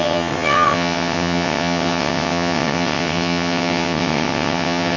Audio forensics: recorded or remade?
remade